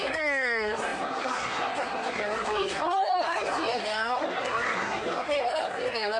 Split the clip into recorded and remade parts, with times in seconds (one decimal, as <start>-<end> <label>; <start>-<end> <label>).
0.0-6.2 remade